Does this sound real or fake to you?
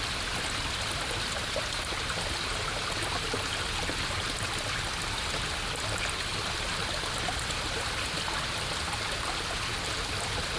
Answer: real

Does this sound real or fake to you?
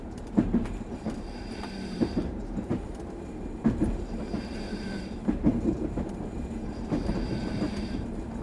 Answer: fake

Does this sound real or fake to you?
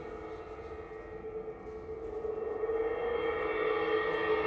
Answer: real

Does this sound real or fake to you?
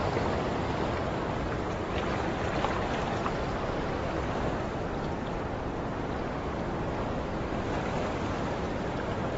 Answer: real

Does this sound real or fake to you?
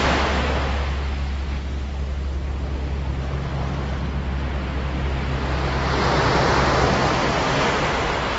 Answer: real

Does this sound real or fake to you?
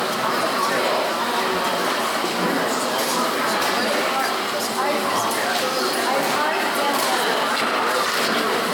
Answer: fake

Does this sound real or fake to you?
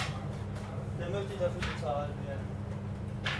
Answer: real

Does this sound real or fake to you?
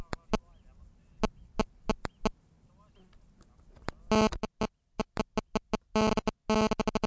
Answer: real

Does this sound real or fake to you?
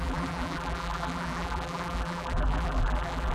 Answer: fake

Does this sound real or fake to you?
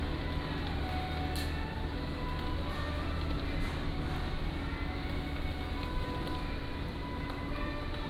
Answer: real